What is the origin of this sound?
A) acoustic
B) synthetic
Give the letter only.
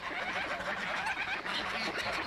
A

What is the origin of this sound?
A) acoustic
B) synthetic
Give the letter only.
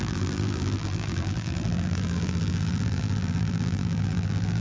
B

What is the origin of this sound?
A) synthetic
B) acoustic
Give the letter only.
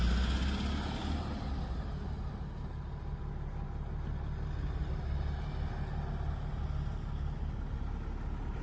B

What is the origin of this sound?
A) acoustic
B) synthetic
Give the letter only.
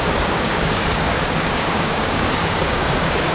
B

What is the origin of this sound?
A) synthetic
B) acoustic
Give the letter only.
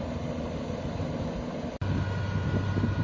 B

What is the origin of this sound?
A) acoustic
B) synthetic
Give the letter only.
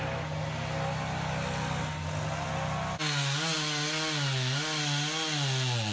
A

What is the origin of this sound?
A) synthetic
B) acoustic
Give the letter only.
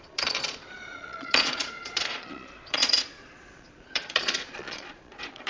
A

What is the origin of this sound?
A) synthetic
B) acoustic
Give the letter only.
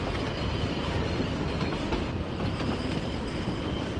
B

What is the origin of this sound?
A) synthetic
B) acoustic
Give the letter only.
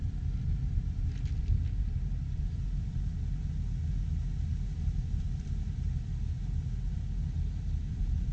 B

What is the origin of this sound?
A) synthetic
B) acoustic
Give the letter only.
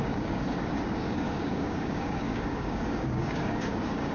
A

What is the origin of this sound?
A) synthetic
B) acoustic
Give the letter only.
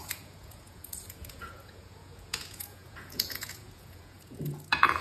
A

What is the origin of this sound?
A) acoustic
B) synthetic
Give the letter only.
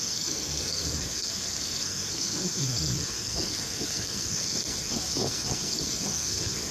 B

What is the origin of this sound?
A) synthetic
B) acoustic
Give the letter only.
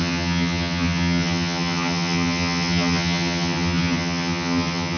A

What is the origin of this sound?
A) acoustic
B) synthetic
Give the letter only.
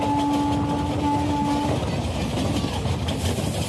A